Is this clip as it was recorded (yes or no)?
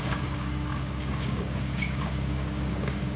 no